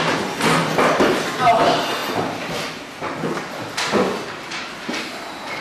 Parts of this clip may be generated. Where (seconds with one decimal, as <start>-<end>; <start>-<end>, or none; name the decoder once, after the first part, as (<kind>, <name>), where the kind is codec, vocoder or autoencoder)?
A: none